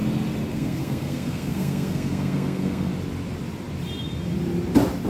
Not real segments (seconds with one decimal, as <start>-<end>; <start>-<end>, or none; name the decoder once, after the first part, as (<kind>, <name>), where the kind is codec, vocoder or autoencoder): 0.5-2.9 (codec, SNAC)